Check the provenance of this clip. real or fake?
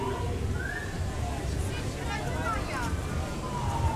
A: real